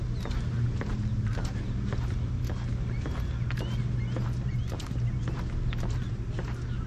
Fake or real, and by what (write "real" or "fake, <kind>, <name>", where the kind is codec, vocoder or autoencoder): real